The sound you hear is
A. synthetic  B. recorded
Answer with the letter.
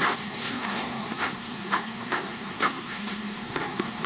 A